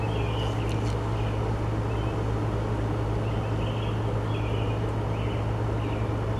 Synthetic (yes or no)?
no